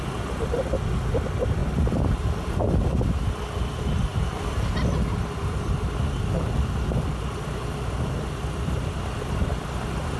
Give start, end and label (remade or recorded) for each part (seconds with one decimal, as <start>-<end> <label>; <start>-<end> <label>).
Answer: 0.0-10.2 recorded